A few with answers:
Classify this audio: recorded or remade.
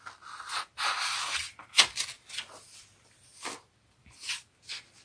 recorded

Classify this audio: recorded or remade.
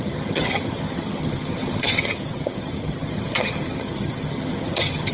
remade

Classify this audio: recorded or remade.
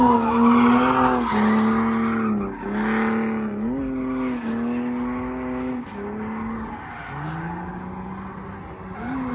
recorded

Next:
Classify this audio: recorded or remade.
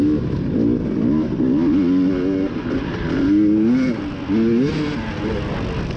recorded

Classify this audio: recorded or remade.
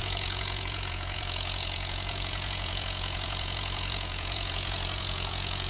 remade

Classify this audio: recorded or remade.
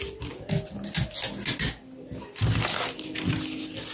recorded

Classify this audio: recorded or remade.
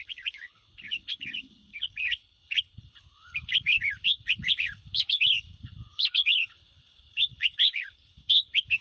remade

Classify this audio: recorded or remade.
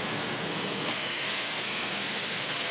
remade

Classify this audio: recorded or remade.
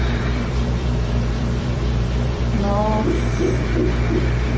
remade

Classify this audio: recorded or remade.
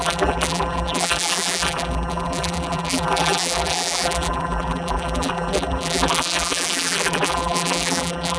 remade